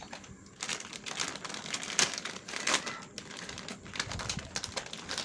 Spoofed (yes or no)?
no